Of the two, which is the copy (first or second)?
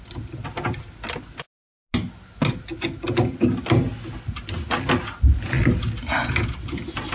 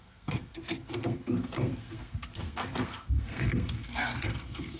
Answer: second